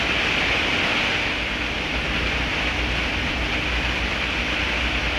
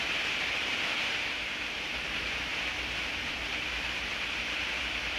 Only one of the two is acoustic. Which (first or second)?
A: first